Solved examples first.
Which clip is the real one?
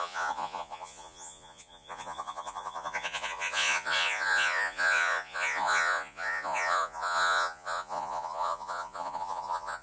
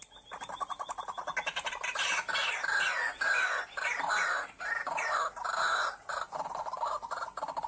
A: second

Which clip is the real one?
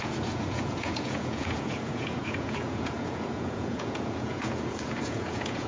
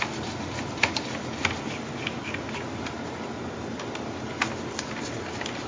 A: second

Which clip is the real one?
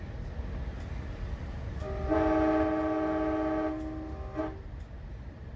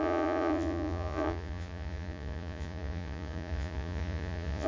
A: first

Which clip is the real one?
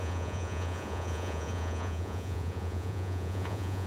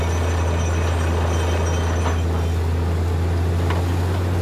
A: second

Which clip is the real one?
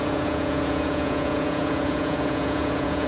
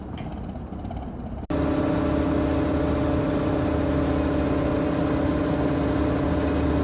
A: second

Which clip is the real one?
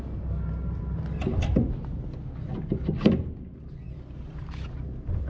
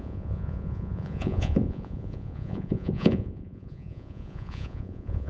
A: first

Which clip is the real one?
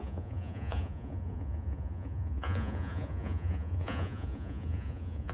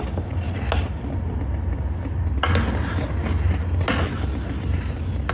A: second